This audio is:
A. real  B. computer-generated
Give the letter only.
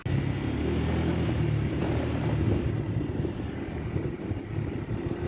A